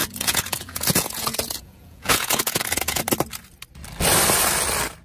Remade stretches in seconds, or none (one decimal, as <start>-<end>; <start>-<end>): 0.0-3.0